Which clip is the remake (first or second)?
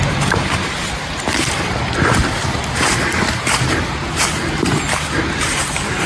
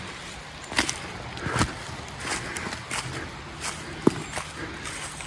first